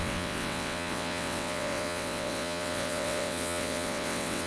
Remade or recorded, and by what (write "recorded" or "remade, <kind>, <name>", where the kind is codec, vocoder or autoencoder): remade, vocoder, WaveNeXt